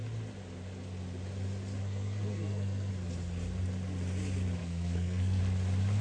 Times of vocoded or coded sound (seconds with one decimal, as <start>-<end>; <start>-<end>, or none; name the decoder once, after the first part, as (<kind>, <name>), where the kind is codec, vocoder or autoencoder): 1.8-2.9 (codec, SNAC); 4.6-5.4